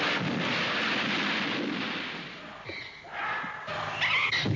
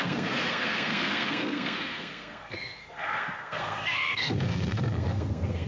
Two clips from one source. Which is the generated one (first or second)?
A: second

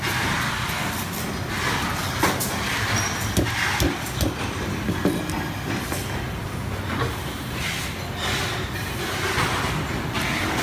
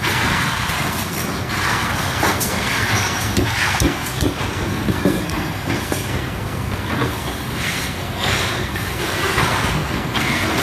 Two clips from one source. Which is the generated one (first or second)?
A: second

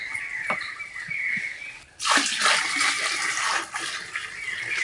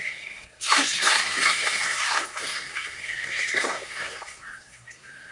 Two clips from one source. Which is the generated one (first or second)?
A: second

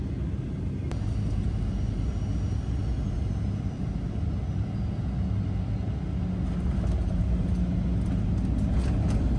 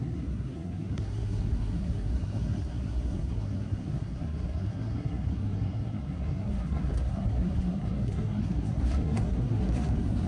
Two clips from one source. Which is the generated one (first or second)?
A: second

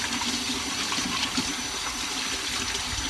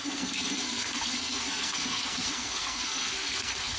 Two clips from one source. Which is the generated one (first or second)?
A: second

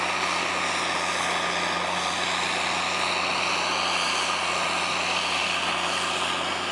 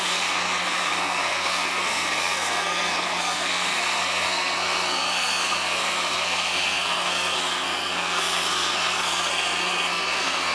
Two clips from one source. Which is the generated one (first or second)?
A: second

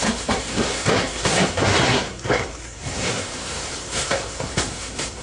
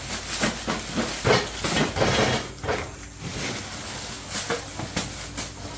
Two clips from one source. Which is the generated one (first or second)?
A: first